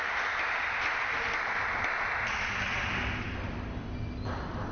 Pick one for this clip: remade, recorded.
recorded